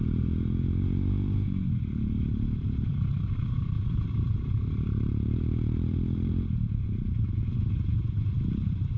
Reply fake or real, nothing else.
fake